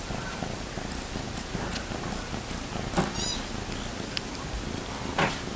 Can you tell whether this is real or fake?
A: real